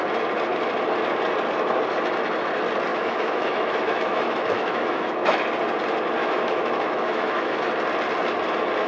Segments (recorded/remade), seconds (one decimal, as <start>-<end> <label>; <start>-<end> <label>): 0.0-2.9 recorded; 2.9-5.5 remade; 5.5-6.2 recorded; 6.2-7.6 remade; 7.6-8.9 recorded